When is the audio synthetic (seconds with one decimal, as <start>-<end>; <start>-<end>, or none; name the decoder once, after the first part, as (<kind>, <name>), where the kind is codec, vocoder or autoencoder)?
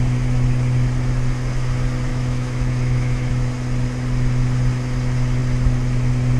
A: 2.1-3.3 (autoencoder, DAC-VAE)